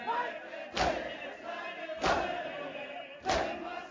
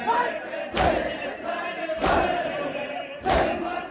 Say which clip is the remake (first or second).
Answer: second